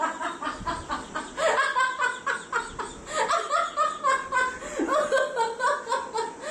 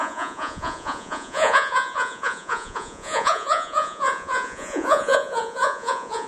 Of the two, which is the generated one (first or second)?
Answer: second